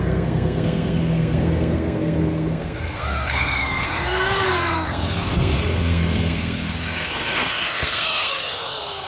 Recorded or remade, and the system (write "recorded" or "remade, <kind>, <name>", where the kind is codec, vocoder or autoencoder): remade, codec, SNAC